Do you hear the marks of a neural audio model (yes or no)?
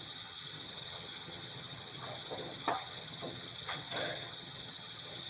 yes